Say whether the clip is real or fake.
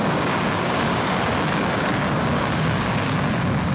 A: fake